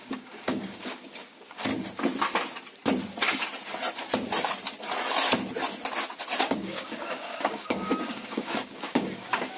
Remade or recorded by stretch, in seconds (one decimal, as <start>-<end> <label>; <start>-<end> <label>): 0.0-1.7 remade; 1.7-6.4 recorded; 6.4-9.6 remade